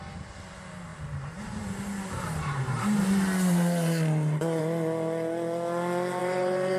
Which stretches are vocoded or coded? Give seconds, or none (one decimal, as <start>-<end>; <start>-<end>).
0.9-4.6; 6.2-6.8